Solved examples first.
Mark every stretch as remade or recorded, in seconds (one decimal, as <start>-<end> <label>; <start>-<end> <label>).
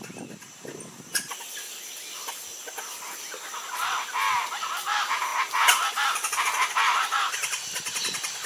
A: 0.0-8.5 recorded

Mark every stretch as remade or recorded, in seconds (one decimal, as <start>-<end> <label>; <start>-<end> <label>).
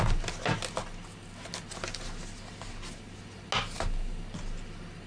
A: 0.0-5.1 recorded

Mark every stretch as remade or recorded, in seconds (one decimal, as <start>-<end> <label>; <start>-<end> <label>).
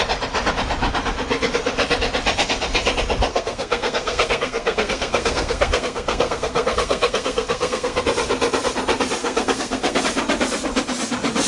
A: 0.0-3.3 recorded; 3.3-8.0 remade; 8.0-9.2 recorded; 9.2-10.0 remade; 10.0-11.5 recorded